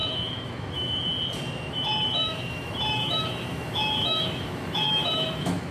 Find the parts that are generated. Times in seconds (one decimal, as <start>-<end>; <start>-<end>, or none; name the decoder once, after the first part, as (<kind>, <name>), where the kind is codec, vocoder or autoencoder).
0.0-1.1 (autoencoder, DAC-VAE); 1.7-5.7